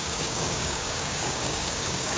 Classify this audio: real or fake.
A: fake